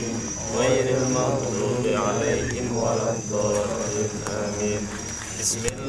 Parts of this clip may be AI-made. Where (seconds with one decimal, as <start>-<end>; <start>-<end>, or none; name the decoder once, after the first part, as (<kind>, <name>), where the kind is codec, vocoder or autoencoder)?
none